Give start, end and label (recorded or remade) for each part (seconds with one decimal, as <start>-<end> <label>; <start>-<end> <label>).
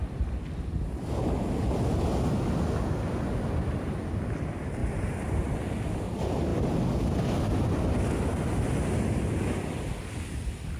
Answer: 0.0-10.8 recorded